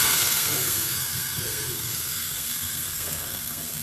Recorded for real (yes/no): no